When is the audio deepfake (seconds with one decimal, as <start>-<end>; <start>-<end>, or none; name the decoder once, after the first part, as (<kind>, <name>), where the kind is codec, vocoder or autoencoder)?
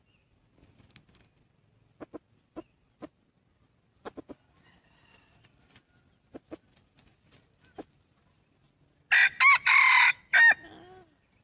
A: none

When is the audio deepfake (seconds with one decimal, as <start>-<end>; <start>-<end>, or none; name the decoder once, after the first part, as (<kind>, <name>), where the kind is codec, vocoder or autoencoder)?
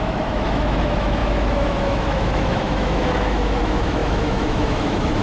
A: 0.0-5.2 (autoencoder, DAC-VAE)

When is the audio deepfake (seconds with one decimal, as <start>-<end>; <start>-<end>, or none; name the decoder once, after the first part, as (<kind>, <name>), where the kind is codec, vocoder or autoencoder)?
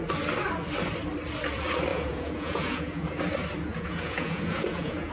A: 1.9-3.2 (vocoder, Vocos); 3.7-5.1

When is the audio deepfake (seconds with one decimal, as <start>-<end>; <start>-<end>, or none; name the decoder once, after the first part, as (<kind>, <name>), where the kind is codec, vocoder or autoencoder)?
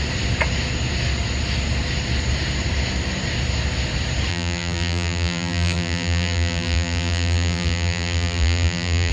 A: 4.3-9.1 (vocoder, BigVGAN v2)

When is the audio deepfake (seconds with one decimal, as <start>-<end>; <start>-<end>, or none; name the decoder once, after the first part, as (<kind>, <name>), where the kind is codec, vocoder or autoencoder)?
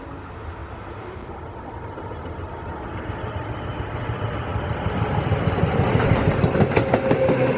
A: none